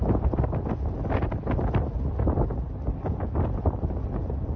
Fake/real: real